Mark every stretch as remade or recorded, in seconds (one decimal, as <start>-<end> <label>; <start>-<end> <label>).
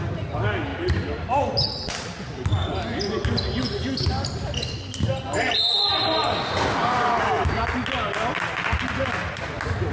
0.0-9.9 recorded